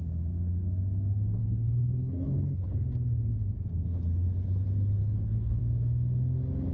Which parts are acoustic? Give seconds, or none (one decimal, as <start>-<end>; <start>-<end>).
0.0-1.4; 2.7-5.0; 5.6-6.7